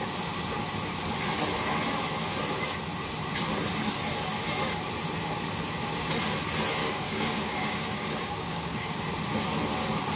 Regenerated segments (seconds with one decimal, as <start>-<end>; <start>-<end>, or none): 6.8-9.0